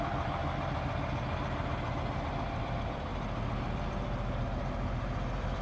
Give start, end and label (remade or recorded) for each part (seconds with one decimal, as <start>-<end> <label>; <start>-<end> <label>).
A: 0.0-0.4 remade; 0.4-2.6 recorded; 2.6-3.1 remade; 3.1-5.6 recorded